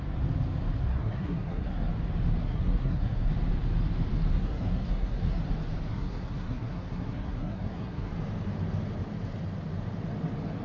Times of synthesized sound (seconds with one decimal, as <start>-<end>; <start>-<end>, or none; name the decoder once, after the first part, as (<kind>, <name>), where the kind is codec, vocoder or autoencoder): 0.9-1.9 (codec, SNAC); 2.4-3.3; 4.3-5.4; 5.9-8.1